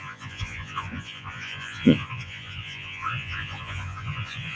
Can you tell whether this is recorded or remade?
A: remade